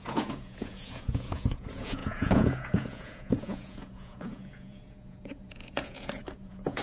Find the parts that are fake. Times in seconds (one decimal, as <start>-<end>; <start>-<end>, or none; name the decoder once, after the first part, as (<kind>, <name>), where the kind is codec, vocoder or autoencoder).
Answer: 0.0-6.8 (vocoder, Vocos)